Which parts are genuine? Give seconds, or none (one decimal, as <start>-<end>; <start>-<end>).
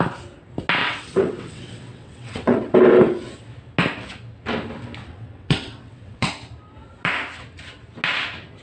0.0-0.8; 2.7-5.0; 6.3-8.6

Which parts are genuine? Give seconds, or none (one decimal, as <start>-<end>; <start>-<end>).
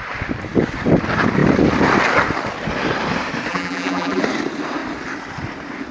0.0-3.5; 4.2-5.9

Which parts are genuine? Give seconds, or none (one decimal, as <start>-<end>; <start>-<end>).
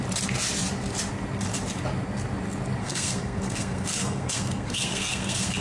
0.0-2.8